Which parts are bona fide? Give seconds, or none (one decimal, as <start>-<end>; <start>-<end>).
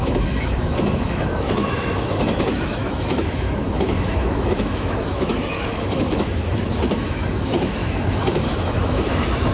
none